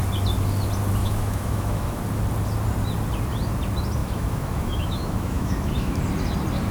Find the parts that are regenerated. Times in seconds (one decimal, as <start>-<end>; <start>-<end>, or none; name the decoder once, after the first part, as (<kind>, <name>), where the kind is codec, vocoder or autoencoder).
1.0-2.0 (autoencoder, DAC-VAE); 4.0-6.0